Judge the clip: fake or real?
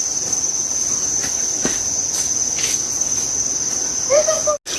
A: real